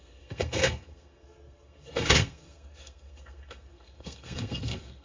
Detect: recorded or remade remade